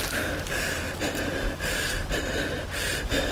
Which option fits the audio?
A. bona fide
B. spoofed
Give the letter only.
A